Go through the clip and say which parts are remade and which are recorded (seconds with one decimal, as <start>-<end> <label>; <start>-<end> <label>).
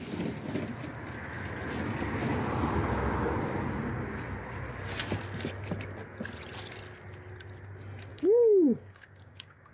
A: 0.0-8.1 recorded; 8.1-9.7 remade